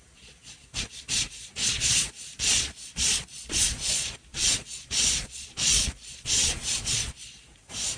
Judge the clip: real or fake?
fake